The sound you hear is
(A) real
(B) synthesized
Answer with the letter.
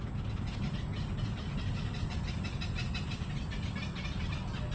A